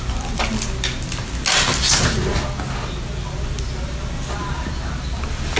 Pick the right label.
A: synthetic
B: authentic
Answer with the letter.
B